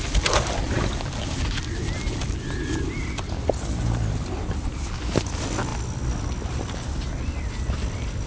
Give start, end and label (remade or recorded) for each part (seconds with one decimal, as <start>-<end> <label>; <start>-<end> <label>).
0.0-8.3 recorded